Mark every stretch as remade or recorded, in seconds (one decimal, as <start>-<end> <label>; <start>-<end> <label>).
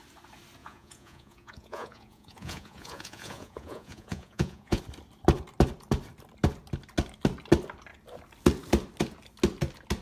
0.0-0.6 recorded; 0.6-4.8 remade; 4.8-10.0 recorded